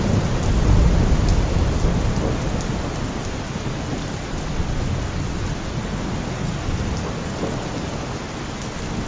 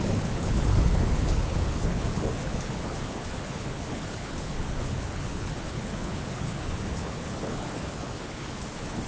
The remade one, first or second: second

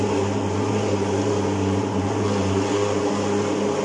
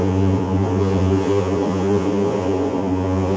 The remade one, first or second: second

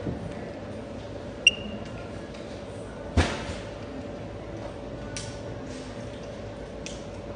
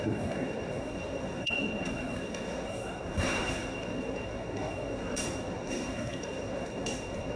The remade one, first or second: second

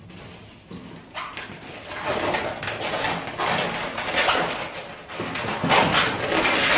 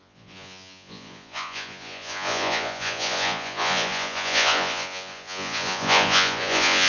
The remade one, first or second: second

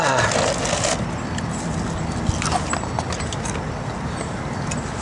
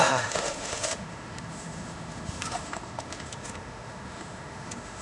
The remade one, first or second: second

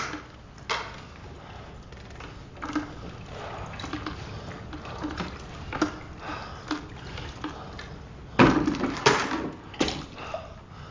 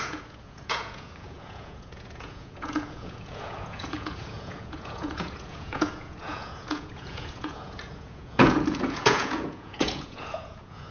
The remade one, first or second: second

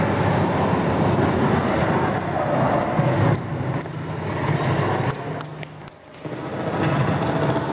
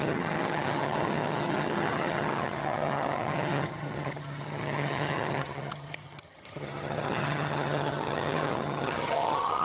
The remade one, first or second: second